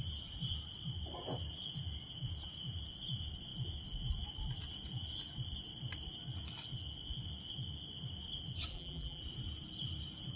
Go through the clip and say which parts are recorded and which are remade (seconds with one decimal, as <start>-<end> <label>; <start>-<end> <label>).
0.0-8.7 recorded; 8.7-9.2 remade; 9.2-10.4 recorded

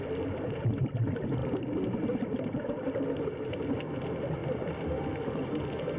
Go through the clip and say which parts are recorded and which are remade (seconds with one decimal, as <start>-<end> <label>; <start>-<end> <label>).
0.0-4.4 recorded; 4.4-5.6 remade; 5.6-6.0 recorded

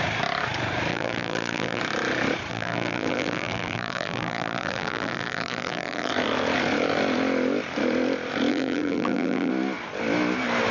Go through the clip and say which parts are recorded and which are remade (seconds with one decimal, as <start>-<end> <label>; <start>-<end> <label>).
0.0-0.9 recorded; 0.9-1.8 remade; 1.8-2.5 recorded; 2.5-6.1 remade; 6.1-8.5 recorded; 8.5-9.5 remade; 9.5-10.7 recorded

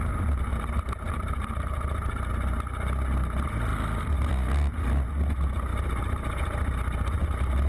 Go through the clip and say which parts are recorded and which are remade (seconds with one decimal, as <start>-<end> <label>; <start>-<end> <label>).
0.0-0.5 recorded; 0.5-2.3 remade; 2.3-7.7 recorded

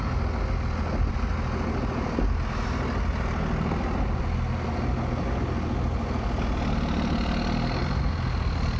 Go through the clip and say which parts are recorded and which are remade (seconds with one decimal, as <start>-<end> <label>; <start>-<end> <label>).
0.0-8.8 recorded

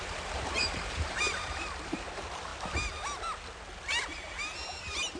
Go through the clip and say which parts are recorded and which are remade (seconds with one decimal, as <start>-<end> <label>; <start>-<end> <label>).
0.0-2.5 remade; 2.5-4.1 recorded; 4.1-5.2 remade

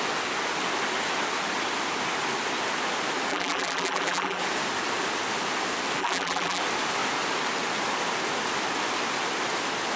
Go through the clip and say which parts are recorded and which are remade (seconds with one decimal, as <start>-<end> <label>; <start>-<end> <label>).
0.0-3.3 recorded; 3.3-4.4 remade; 4.4-6.0 recorded; 6.0-6.6 remade; 6.6-10.0 recorded